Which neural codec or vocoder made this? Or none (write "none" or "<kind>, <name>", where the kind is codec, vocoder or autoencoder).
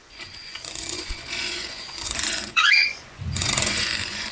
vocoder, Vocos